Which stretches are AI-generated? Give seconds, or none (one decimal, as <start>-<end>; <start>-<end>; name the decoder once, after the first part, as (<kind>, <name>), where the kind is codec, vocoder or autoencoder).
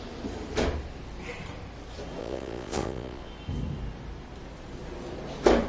2.2-3.3 (vocoder, Vocos)